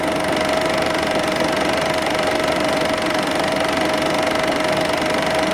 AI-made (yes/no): yes